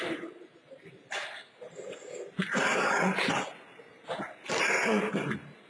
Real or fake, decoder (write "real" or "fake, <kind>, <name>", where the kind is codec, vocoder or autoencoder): real